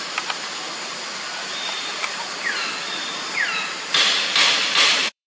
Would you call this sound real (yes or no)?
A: no